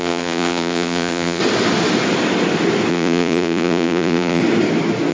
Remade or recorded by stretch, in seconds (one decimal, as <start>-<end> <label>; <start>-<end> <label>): 0.0-1.4 remade; 1.4-2.9 recorded; 2.9-4.4 remade; 4.4-5.1 recorded